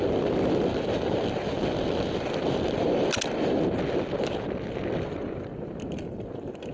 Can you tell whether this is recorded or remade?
recorded